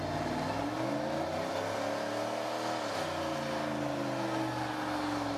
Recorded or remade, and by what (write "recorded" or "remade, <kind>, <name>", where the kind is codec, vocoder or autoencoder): recorded